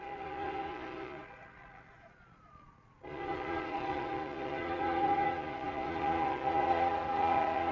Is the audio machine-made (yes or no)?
yes